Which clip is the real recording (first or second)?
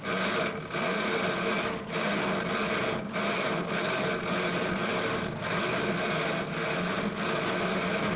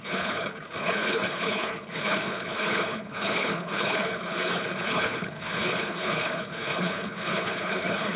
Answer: first